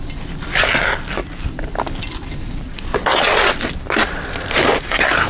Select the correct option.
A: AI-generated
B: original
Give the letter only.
B